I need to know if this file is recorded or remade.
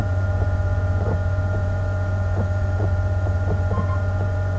remade